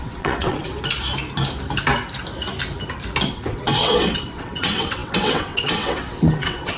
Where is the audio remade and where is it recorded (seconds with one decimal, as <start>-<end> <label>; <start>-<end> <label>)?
0.0-0.7 remade; 0.7-3.3 recorded; 3.3-6.8 remade